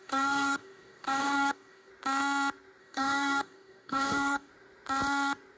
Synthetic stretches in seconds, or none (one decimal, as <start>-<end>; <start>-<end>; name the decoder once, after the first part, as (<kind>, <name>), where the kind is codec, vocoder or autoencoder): 0.0-1.9 (codec, DAC); 2.8-4.5